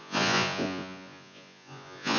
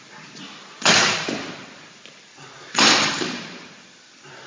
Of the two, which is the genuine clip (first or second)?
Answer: second